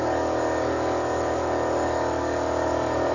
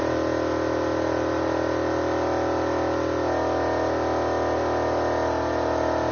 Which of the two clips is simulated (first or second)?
first